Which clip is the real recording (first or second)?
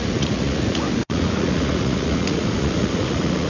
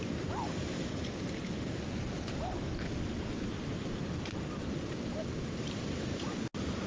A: second